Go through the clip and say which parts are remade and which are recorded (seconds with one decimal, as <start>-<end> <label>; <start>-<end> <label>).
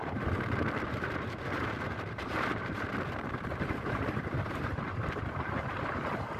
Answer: 0.0-0.9 recorded; 0.9-4.7 remade; 4.7-6.4 recorded